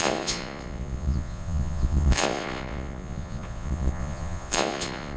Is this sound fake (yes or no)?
yes